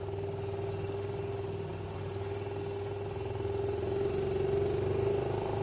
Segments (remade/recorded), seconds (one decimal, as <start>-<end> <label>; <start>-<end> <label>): 0.0-5.6 recorded